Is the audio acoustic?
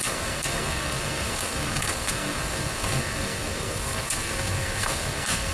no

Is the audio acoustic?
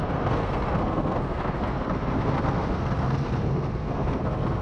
no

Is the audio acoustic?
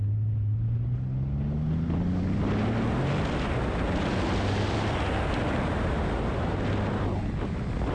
yes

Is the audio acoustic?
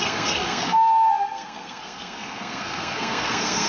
no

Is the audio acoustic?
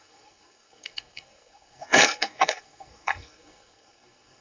no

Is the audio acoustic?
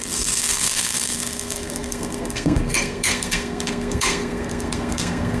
no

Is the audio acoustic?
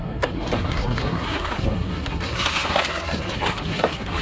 no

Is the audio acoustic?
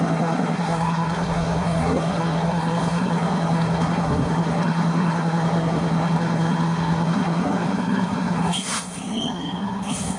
no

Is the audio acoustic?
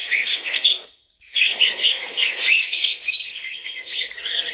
no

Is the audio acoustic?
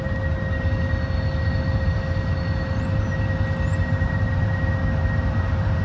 yes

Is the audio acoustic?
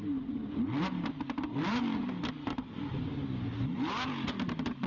yes